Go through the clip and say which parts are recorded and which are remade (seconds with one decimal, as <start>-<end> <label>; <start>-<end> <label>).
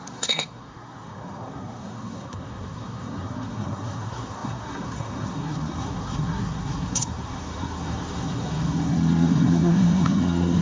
0.0-10.6 remade